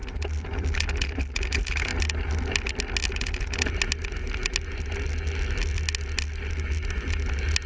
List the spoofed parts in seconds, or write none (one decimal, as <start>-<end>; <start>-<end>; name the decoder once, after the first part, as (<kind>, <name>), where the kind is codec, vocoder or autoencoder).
none